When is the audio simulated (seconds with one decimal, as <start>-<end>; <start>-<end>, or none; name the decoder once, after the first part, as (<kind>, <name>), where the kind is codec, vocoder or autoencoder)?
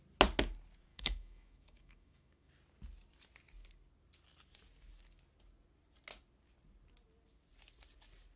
0.9-2.5 (autoencoder, DAC-VAE)